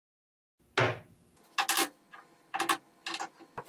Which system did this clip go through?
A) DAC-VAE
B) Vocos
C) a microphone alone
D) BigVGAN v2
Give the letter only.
C